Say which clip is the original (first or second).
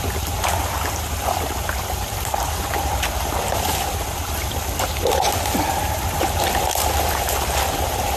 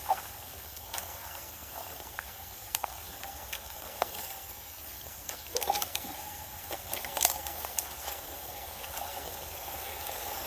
first